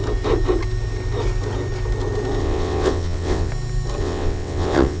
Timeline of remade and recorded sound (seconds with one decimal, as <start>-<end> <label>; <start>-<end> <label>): 0.0-2.4 recorded; 2.4-3.5 remade; 3.5-4.0 recorded; 4.0-5.0 remade